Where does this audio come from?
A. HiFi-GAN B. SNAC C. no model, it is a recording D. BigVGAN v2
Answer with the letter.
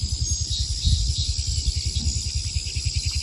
C